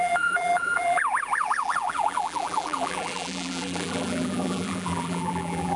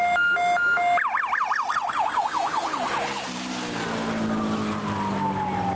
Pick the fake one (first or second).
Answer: first